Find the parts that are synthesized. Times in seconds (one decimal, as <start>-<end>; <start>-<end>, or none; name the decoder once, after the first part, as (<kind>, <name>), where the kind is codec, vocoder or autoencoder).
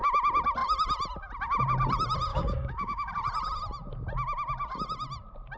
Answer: 2.3-3.1 (codec, DAC)